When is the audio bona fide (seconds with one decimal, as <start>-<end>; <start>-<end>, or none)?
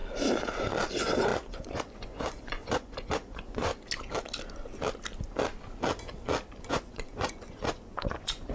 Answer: 0.0-0.9; 3.7-6.7